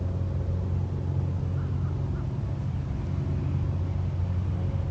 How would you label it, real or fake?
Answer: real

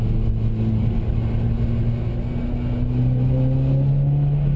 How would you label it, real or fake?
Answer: real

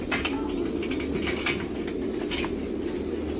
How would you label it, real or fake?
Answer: real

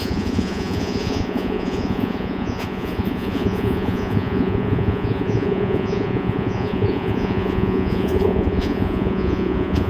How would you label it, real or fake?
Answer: fake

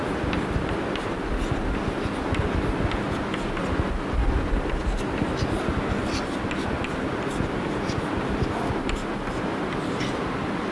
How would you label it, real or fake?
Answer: real